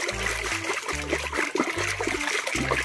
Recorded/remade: recorded